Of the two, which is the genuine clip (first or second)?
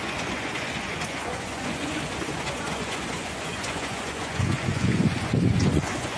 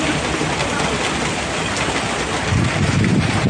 second